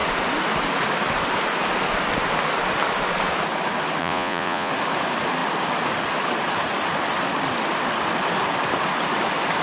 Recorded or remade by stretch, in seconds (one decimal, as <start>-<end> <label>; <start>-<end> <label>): 0.0-4.0 recorded; 4.0-4.7 remade; 4.7-9.6 recorded